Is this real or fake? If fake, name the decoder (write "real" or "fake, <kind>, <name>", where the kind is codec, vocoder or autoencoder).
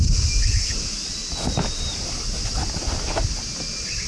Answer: real